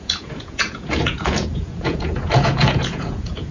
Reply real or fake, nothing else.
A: fake